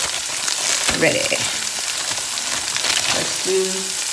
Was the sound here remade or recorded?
recorded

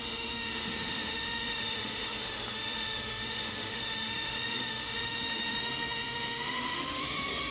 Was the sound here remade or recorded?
remade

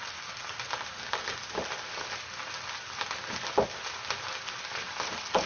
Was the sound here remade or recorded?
recorded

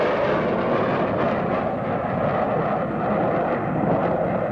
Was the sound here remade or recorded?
recorded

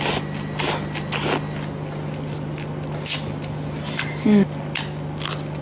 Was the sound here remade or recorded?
recorded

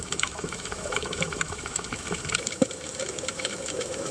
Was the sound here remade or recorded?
remade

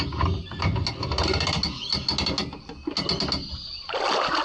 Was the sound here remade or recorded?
recorded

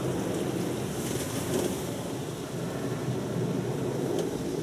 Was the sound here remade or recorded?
recorded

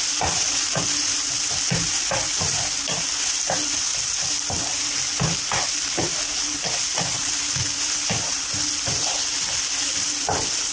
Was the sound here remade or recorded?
recorded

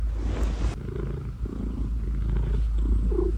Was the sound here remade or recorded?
recorded